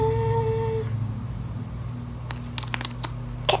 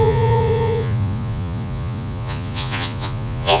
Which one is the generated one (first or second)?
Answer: second